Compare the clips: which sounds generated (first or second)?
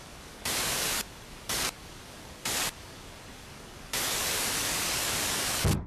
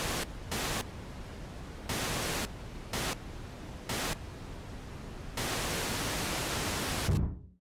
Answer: first